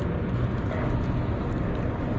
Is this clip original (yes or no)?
yes